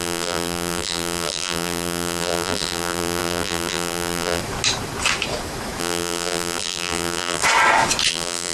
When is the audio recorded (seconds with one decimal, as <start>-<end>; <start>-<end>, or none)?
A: 4.4-5.8; 7.4-8.1